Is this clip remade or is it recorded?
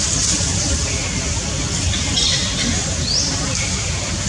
recorded